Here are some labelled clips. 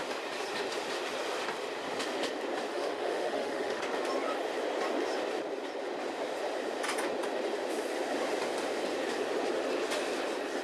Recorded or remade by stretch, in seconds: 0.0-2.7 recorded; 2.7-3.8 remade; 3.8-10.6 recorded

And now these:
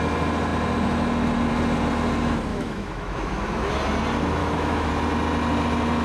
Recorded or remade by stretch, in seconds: 0.0-2.5 recorded; 2.5-3.7 remade; 3.7-4.4 recorded; 4.4-4.9 remade; 4.9-6.0 recorded

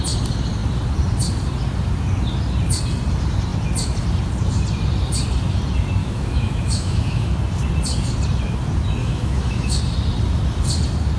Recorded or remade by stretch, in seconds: 0.0-6.0 recorded; 6.0-7.3 remade; 7.3-9.0 recorded; 9.0-9.8 remade; 9.8-11.2 recorded

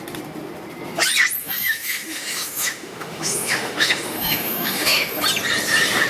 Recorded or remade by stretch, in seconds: 0.0-1.4 recorded; 1.4-5.1 remade; 5.1-6.1 recorded

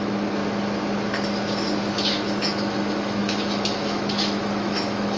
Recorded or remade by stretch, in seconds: 0.0-0.4 remade; 0.4-1.9 recorded; 1.9-5.2 remade

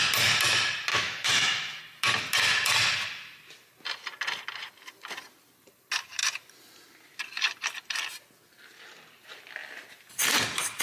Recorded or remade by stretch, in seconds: 0.0-0.9 recorded; 0.9-1.8 remade; 1.8-10.8 recorded